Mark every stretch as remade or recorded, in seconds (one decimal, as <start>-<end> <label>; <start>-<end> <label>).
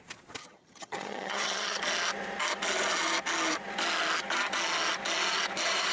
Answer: 0.0-0.4 recorded; 0.4-1.8 remade; 1.8-5.9 recorded